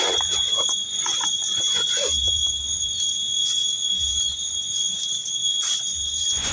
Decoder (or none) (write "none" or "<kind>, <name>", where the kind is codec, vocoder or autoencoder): vocoder, Vocos